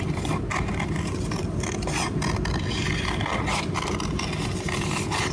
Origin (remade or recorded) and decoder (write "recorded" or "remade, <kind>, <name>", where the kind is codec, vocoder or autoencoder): recorded